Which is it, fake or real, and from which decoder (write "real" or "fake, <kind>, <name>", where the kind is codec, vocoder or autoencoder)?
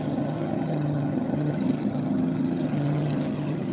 fake, vocoder, HiFi-GAN